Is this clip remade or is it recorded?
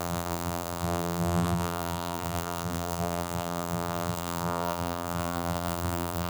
remade